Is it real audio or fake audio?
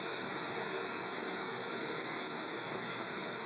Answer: fake